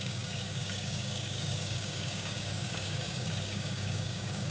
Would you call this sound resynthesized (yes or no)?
yes